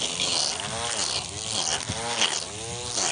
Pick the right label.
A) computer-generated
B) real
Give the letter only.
B